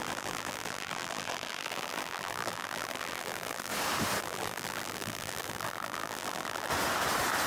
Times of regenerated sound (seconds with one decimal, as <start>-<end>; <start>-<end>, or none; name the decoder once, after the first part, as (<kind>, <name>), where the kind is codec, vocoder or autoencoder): 0.0-3.7 (vocoder, BigVGAN v2); 4.2-6.7